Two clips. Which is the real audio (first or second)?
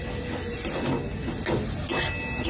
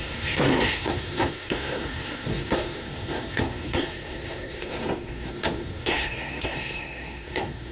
first